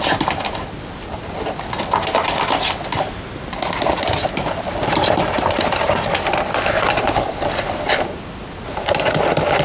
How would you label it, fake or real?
real